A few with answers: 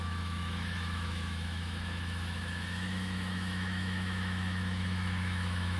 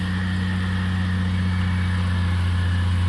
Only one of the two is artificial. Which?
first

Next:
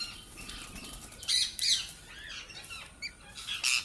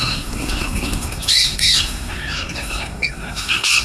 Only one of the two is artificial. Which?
second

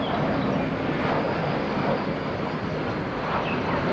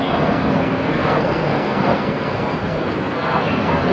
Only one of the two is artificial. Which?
second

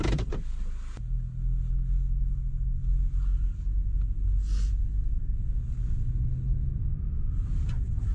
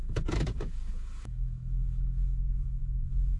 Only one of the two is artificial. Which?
second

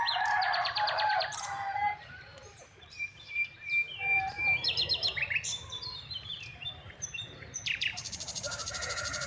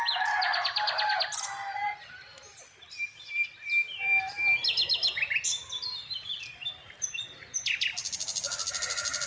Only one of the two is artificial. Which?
first